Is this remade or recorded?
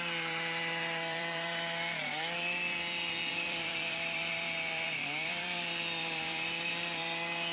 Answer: remade